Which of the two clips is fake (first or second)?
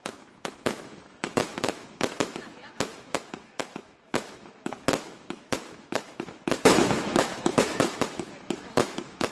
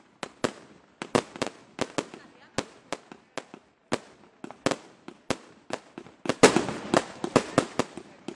first